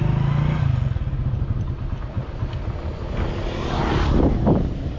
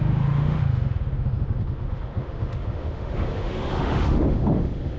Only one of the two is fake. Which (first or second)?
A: second